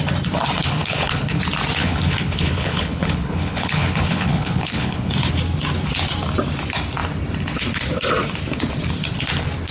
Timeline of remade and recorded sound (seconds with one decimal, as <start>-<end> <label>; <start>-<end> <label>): 0.0-0.6 recorded; 0.6-1.4 remade; 1.4-1.8 recorded; 1.8-5.1 remade; 5.1-9.7 recorded